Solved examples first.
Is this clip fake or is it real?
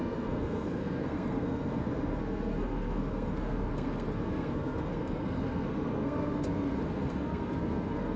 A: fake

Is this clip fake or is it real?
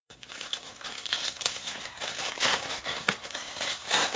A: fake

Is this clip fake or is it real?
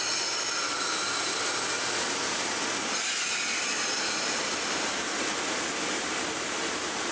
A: real